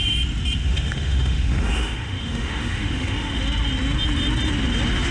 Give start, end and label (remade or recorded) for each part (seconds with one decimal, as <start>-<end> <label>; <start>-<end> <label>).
0.0-0.6 recorded; 0.6-3.4 remade; 3.4-5.1 recorded